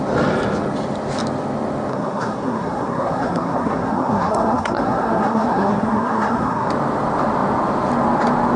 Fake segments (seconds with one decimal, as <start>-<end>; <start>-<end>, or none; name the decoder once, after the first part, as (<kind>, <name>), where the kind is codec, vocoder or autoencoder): 1.9-6.7 (codec, SNAC)